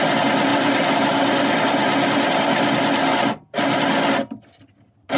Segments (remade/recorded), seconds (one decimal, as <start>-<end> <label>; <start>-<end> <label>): 0.0-5.2 recorded